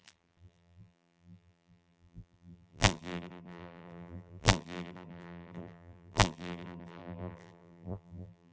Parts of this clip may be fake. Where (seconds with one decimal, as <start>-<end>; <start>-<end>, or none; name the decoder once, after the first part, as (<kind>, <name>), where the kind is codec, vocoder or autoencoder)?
0.0-8.5 (vocoder, BigVGAN v2)